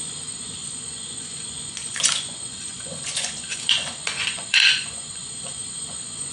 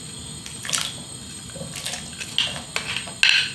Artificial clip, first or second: first